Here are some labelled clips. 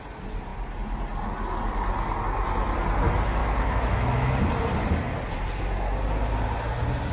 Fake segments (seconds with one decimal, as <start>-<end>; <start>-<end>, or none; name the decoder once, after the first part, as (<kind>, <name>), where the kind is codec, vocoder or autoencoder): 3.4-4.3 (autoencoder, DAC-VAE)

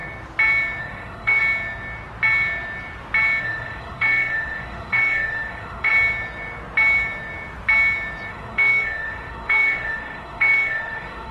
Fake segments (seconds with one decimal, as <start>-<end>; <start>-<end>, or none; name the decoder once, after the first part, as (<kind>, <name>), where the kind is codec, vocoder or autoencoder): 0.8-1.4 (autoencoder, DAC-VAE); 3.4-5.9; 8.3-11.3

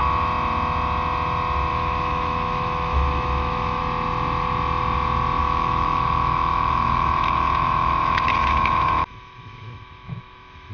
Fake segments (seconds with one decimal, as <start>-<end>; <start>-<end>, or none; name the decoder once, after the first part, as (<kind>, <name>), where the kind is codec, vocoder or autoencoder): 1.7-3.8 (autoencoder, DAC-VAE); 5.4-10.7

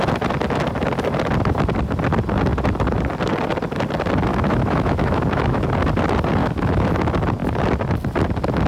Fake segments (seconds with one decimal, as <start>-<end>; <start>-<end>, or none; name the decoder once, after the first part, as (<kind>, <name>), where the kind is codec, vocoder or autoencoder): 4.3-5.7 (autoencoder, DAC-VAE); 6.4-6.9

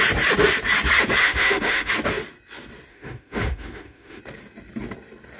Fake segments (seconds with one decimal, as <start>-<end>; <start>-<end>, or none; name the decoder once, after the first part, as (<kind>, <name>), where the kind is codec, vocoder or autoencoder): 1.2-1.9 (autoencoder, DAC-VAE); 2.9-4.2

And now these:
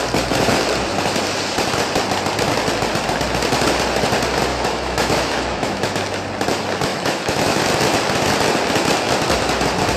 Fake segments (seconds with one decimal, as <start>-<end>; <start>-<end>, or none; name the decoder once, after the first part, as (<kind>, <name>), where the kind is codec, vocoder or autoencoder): 4.5-6.0 (autoencoder, DAC-VAE); 6.9-7.6

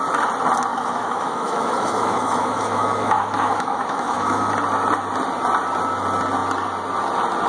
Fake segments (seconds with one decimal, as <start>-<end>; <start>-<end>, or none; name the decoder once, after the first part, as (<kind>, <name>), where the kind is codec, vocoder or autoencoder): 0.7-4.5 (autoencoder, DAC-VAE)

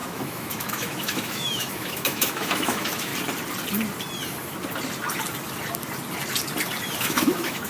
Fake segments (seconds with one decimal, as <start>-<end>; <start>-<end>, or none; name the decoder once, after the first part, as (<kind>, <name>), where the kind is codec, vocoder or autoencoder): 0.0-3.1 (autoencoder, DAC-VAE); 7.0-7.7